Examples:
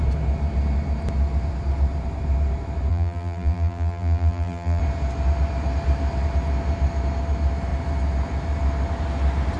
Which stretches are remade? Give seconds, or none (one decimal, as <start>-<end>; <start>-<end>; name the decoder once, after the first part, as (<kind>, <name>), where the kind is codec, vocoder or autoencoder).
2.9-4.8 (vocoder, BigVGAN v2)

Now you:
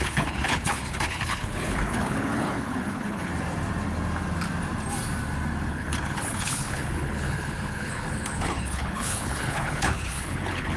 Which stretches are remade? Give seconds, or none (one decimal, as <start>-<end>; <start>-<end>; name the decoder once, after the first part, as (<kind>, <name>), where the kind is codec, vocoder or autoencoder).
0.0-3.3 (codec, HILCodec); 5.7-10.8

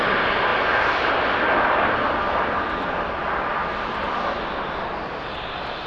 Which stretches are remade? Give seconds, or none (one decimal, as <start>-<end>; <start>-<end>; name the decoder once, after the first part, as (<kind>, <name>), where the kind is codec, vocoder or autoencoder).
none

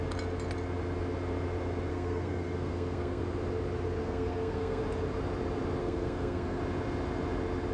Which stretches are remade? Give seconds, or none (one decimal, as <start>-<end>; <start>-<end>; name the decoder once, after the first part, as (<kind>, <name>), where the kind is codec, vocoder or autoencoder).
1.9-3.2 (codec, SNAC); 4.0-4.8; 5.8-6.6

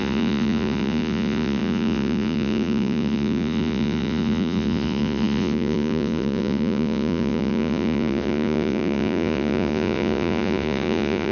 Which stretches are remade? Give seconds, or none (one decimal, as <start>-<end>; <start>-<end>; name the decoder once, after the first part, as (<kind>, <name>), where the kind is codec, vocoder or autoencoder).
0.0-11.3 (vocoder, Vocos)